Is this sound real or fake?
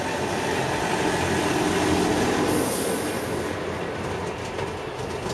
real